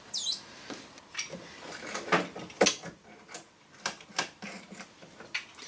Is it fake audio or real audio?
real